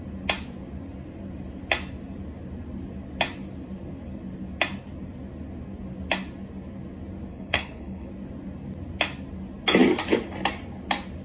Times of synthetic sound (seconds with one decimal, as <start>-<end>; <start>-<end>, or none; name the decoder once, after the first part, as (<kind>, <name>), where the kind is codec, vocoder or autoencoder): 7.3-8.1 (codec, HILCodec)